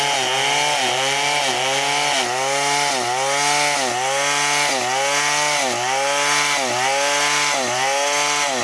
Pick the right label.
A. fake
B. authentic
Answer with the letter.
B